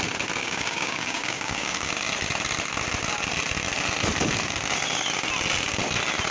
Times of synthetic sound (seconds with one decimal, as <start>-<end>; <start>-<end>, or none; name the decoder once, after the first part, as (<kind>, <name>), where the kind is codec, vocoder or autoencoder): 0.4-1.9 (codec, DAC)